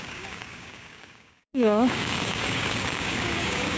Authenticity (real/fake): fake